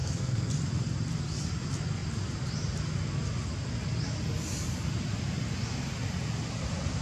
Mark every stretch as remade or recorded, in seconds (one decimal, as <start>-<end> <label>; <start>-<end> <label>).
0.0-0.5 remade; 0.5-7.0 recorded